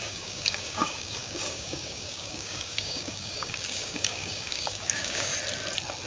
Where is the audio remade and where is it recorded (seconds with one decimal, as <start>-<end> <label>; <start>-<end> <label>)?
0.0-5.3 remade; 5.3-6.1 recorded